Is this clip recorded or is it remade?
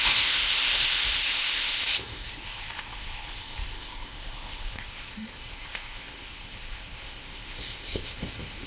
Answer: remade